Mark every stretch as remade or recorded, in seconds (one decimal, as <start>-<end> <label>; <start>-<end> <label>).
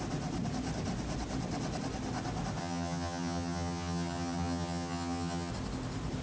0.0-2.6 recorded; 2.6-5.5 remade; 5.5-6.2 recorded